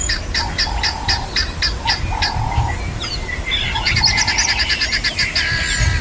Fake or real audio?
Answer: real